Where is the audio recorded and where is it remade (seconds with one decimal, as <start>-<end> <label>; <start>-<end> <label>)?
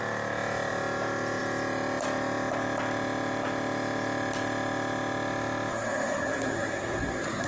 0.0-5.7 recorded; 5.7-7.5 remade